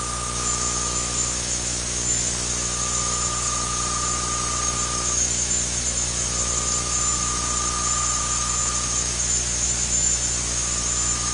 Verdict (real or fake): fake